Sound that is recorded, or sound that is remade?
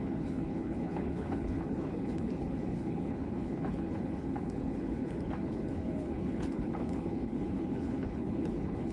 remade